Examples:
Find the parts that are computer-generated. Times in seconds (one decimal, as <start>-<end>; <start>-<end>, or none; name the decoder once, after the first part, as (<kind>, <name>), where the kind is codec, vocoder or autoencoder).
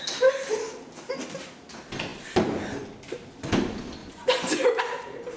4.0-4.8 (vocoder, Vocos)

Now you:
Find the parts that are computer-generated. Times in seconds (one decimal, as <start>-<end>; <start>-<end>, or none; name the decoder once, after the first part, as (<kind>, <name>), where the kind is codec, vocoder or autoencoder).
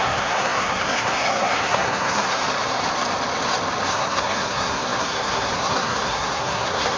0.0-2.4 (codec, SNAC); 3.9-7.0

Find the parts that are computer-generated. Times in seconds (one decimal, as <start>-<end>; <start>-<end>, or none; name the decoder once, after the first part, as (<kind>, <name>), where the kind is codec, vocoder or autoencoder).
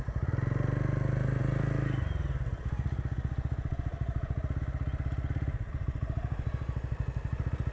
none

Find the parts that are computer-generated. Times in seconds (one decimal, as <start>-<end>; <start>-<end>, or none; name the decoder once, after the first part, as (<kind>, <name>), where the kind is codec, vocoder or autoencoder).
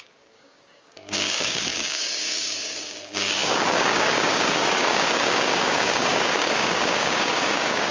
0.0-7.9 (codec, DAC)